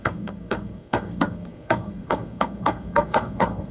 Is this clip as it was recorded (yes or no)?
no